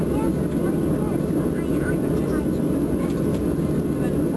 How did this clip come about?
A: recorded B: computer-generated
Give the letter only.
A